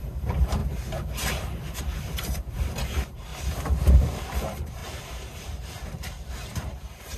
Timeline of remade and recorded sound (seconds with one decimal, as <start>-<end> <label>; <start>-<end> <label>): 0.0-0.6 remade; 0.6-1.8 recorded; 1.8-3.3 remade; 3.3-3.9 recorded; 3.9-7.2 remade